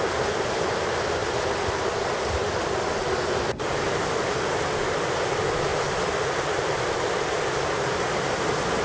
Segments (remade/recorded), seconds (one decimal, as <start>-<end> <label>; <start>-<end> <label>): 0.0-1.2 recorded; 1.2-4.4 remade; 4.4-5.7 recorded; 5.7-8.0 remade; 8.0-8.8 recorded